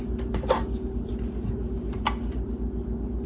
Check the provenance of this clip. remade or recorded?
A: remade